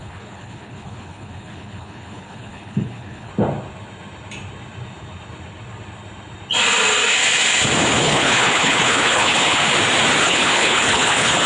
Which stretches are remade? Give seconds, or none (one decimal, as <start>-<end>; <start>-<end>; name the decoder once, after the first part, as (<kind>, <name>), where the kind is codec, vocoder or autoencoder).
0.0-3.3 (codec, HILCodec); 8.0-9.6; 10.2-11.5